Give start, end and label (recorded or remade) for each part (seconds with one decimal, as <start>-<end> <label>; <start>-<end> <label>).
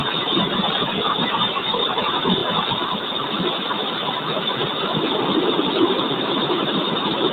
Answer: 0.0-2.4 remade; 2.4-6.1 recorded; 6.1-7.3 remade